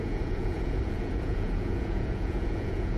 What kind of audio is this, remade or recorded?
remade